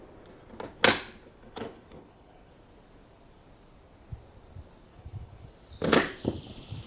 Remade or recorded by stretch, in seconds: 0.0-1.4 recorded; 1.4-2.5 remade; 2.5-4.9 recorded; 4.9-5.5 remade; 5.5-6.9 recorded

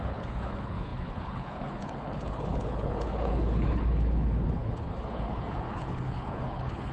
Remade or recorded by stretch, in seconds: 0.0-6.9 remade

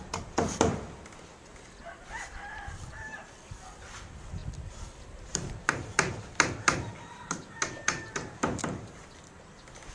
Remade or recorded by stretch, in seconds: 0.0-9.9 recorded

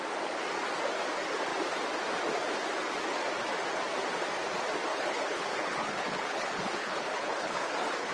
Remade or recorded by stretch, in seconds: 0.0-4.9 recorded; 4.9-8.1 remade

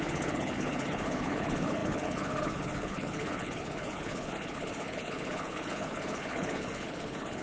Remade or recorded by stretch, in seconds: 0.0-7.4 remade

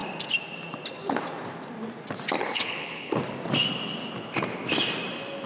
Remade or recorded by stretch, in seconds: 0.0-2.4 recorded; 2.4-3.2 remade; 3.2-5.5 recorded